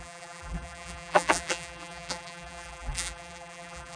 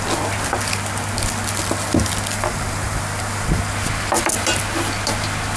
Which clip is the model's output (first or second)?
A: first